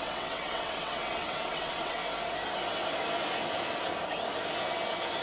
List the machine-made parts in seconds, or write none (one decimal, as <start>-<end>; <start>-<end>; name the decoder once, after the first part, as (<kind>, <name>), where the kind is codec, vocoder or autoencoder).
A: 0.0-2.0 (vocoder, WaveNeXt)